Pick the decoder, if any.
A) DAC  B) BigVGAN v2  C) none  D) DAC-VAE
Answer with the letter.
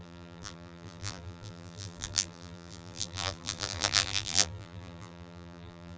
B